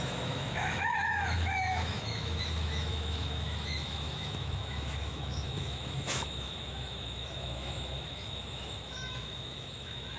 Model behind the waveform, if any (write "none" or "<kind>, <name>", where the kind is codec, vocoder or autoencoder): autoencoder, DAC-VAE